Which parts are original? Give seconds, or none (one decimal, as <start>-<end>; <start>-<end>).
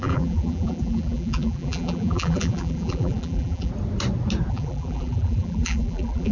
3.7-4.5